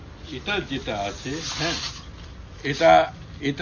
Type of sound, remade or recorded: recorded